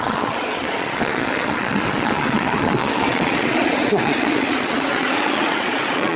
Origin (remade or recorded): remade